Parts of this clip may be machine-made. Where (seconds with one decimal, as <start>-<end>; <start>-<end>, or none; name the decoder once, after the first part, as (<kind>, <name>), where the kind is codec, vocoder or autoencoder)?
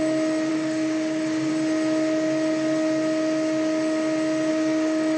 0.5-1.5 (codec, DAC); 4.5-5.2